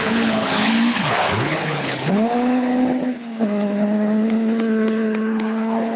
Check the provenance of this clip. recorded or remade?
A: remade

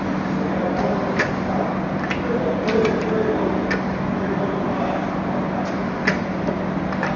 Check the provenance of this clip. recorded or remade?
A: recorded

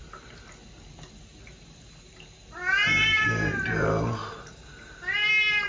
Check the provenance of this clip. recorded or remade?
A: recorded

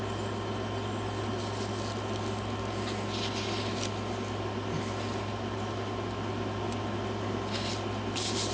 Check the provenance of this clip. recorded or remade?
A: recorded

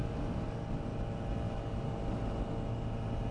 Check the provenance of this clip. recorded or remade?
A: recorded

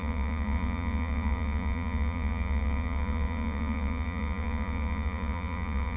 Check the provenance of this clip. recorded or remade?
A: remade